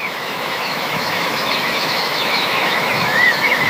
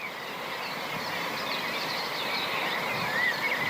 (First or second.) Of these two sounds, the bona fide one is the second